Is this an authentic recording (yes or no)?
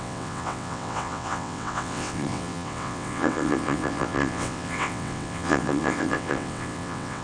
no